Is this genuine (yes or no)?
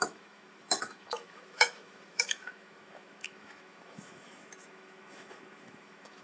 no